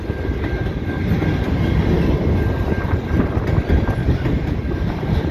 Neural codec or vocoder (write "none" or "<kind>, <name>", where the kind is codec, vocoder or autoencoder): none